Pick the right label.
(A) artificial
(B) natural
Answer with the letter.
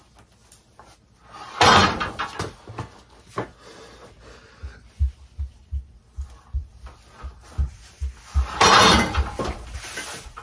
B